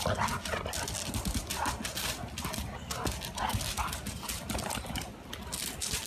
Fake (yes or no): no